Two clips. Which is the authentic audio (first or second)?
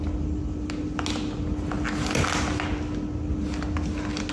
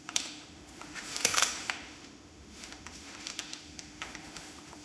first